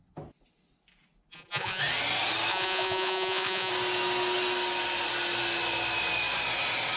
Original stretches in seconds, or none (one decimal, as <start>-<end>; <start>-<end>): 0.0-1.3; 1.8-2.5; 3.7-7.0